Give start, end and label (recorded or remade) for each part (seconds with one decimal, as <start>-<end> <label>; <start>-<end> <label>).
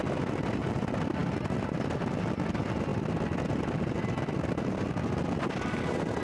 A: 0.0-6.2 recorded